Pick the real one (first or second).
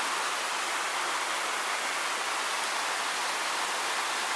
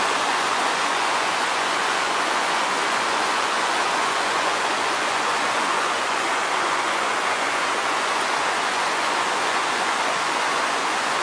first